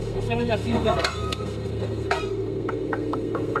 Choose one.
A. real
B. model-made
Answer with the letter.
B